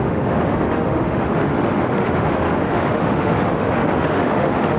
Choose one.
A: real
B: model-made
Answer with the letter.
B